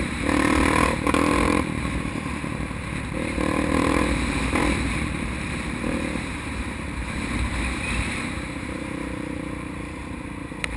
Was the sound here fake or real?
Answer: fake